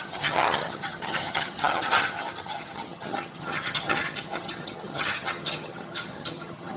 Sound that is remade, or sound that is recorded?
remade